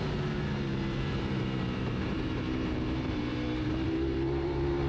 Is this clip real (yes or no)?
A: no